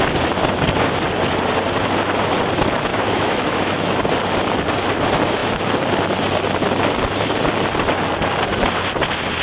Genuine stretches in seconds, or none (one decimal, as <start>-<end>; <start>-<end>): 0.0-2.9; 4.0-9.4